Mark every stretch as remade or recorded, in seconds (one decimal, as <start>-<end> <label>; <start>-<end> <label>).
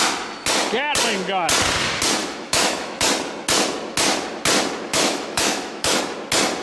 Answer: 0.0-2.2 recorded; 2.2-3.1 remade; 3.1-4.9 recorded; 4.9-6.0 remade; 6.0-6.6 recorded